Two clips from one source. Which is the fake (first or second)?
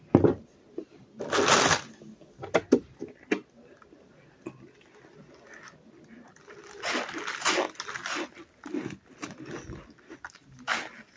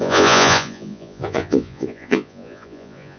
second